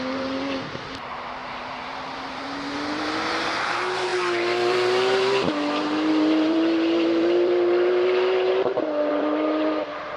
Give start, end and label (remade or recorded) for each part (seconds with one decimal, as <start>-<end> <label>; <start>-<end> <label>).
0.0-10.2 remade